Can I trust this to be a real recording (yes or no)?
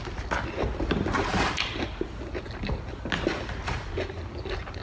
yes